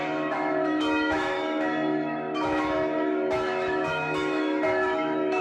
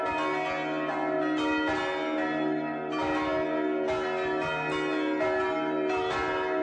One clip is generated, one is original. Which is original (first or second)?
second